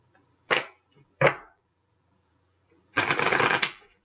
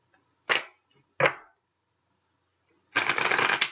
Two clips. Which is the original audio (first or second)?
second